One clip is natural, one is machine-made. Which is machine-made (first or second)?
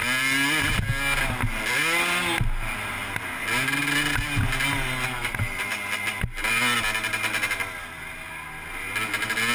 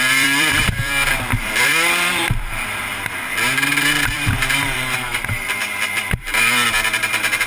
second